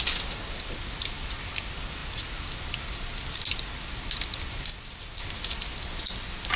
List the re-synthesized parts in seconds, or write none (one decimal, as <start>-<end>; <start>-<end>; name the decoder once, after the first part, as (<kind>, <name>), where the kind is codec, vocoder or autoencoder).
none